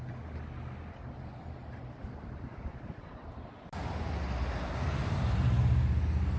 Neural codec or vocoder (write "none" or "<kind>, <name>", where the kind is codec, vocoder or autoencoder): none